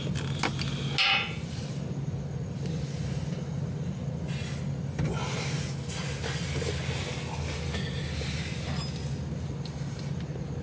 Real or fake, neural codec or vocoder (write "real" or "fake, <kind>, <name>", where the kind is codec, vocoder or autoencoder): real